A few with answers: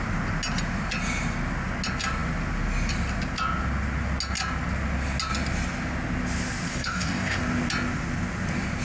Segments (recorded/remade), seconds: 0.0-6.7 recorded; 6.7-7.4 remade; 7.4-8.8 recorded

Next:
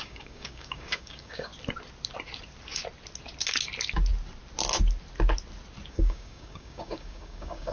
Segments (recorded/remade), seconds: 0.0-1.5 remade; 1.5-5.9 recorded; 5.9-7.7 remade

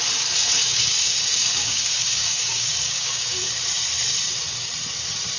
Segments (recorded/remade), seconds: 0.0-0.4 recorded; 0.4-3.6 remade; 3.6-5.4 recorded

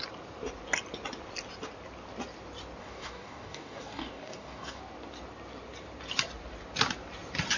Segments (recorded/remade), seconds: 0.0-2.8 recorded; 2.8-4.8 remade; 4.8-7.6 recorded

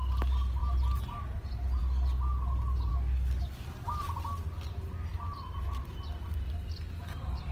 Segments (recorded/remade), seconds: 0.0-2.9 recorded; 2.9-3.5 remade; 3.5-7.5 recorded

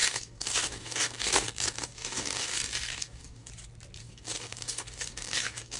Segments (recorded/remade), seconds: 0.0-3.5 remade; 3.5-4.0 recorded; 4.0-5.8 remade

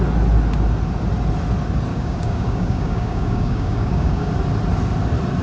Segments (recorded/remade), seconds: 0.0-1.9 recorded; 1.9-4.3 remade; 4.3-5.4 recorded

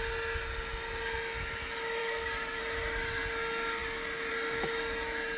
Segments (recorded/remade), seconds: 0.0-2.0 recorded; 2.0-2.6 remade; 2.6-5.4 recorded